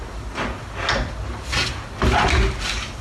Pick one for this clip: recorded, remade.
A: recorded